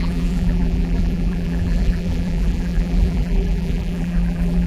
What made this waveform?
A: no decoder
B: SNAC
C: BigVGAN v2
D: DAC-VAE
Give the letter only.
C